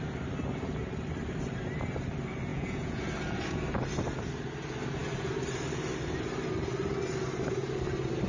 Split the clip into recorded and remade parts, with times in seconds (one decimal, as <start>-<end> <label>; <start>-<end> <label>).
0.0-2.5 recorded; 2.5-3.0 remade; 3.0-8.3 recorded